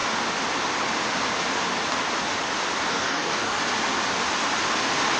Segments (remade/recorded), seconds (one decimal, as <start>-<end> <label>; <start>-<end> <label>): 0.0-2.9 recorded; 2.9-3.6 remade; 3.6-5.2 recorded